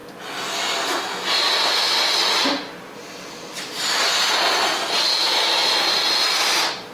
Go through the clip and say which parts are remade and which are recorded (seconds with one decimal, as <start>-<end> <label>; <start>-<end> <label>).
0.0-5.1 recorded; 5.1-5.7 remade; 5.7-6.9 recorded